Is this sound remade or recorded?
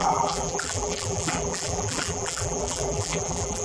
remade